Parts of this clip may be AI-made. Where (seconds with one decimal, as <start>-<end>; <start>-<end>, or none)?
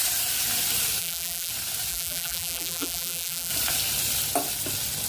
1.0-1.5; 1.9-3.5